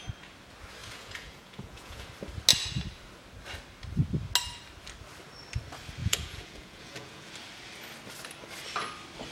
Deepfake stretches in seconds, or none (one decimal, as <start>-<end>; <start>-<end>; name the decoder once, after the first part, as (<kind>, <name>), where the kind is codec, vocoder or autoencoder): 0.8-2.1 (vocoder, Vocos); 6.0-7.3